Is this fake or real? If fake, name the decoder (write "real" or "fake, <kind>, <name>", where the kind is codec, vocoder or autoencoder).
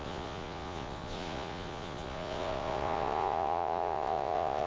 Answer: fake, vocoder, Vocos